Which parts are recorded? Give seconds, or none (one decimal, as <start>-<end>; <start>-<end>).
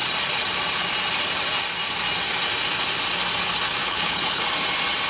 0.0-3.8; 4.4-5.1